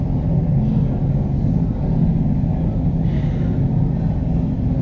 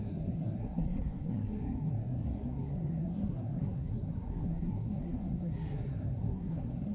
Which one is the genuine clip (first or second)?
first